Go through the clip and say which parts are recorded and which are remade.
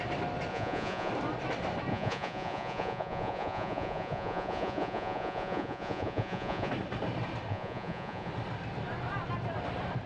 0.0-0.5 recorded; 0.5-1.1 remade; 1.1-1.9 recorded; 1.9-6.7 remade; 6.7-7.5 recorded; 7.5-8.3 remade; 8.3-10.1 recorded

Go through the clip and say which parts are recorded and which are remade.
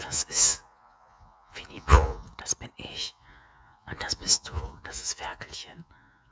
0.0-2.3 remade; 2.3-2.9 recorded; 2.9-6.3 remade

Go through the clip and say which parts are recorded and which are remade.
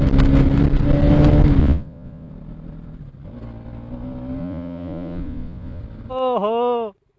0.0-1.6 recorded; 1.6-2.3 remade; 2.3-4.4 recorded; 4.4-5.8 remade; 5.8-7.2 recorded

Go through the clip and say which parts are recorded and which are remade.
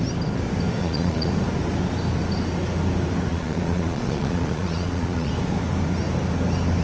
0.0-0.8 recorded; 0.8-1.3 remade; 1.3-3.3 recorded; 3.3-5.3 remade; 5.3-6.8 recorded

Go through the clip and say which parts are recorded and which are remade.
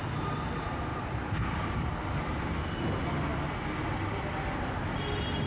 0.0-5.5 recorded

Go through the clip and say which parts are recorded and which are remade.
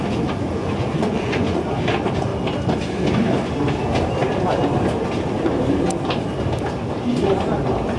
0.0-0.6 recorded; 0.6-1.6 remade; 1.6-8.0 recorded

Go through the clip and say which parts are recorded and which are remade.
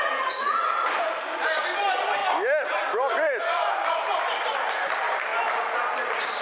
0.0-6.4 recorded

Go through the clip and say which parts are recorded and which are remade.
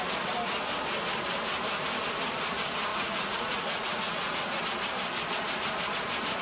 0.0-2.9 recorded; 2.9-4.6 remade; 4.6-6.4 recorded